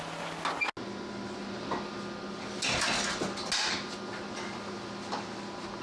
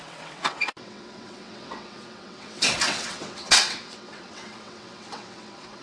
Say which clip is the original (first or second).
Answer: first